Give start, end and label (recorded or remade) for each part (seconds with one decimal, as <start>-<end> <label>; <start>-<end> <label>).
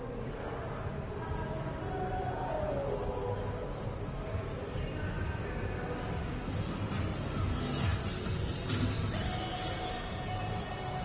0.0-11.0 recorded